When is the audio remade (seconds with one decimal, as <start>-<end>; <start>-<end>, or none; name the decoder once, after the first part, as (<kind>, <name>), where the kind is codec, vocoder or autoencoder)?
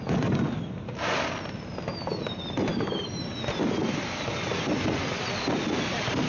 none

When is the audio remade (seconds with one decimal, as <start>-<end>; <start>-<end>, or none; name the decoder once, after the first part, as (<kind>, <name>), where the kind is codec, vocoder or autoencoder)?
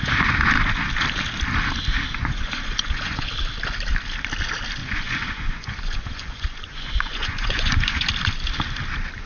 2.2-3.3 (vocoder, Vocos); 4.8-8.0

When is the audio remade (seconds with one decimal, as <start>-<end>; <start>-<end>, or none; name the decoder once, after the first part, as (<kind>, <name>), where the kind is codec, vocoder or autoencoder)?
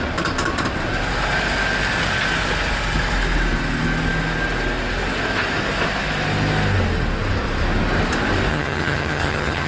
8.5-9.7 (vocoder, HiFi-GAN)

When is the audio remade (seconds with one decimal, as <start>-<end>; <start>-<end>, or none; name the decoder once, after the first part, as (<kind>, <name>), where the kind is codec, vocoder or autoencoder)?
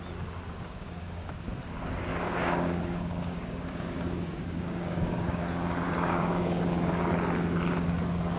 0.5-1.5 (codec, DAC); 2.1-7.1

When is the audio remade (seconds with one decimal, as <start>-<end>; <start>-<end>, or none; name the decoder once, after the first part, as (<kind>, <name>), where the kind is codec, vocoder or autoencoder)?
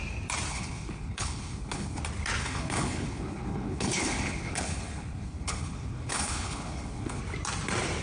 0.5-2.0 (codec, HILCodec); 2.4-7.2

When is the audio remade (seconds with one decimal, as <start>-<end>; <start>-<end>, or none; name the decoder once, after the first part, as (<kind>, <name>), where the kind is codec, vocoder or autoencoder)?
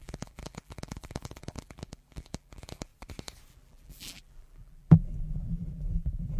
0.0-2.9 (vocoder, BigVGAN v2); 3.5-6.4